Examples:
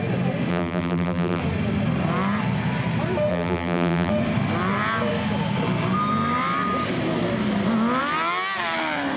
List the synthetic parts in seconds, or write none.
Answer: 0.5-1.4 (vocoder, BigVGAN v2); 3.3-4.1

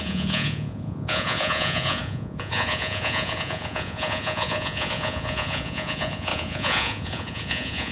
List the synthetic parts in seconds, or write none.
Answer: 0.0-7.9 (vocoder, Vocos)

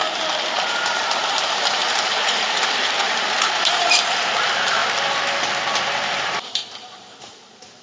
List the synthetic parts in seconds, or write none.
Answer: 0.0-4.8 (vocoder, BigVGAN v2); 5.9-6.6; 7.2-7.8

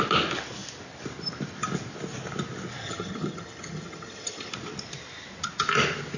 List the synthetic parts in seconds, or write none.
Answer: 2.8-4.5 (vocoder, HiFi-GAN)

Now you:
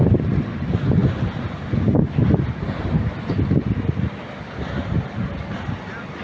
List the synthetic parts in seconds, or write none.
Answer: none

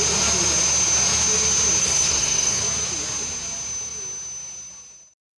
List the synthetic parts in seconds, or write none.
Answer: 1.8-2.6 (codec, SNAC)